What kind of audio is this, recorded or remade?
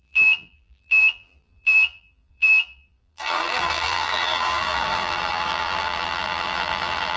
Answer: remade